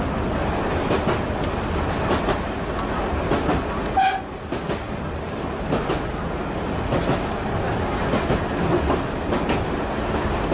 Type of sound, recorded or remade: recorded